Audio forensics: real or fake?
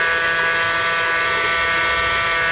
real